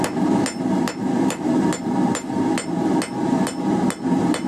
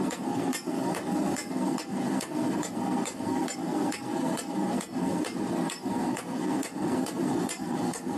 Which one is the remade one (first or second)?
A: second